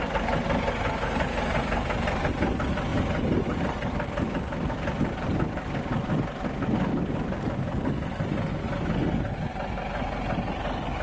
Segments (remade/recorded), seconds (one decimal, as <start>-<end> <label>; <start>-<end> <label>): 0.0-11.0 recorded

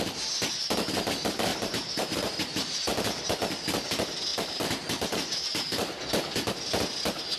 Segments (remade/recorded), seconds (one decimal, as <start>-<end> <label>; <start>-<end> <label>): 0.0-1.5 recorded; 1.5-2.9 remade; 2.9-4.3 recorded; 4.3-5.8 remade; 5.8-7.4 recorded

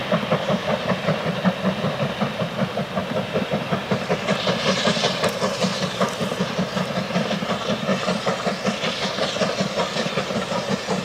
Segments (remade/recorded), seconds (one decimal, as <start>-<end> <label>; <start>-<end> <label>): 0.0-3.4 recorded; 3.4-5.7 remade; 5.7-7.3 recorded; 7.3-7.9 remade; 7.9-10.5 recorded; 10.5-11.0 remade

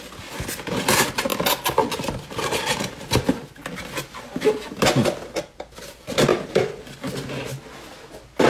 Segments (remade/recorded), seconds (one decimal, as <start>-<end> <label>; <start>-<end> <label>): 0.0-6.3 recorded; 6.3-6.9 remade; 6.9-8.5 recorded